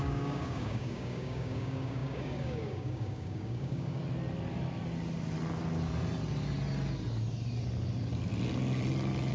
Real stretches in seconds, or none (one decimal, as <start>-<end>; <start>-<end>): 4.0-9.3